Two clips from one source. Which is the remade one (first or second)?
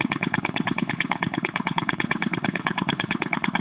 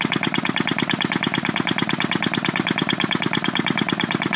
first